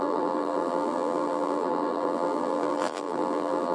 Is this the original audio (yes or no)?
no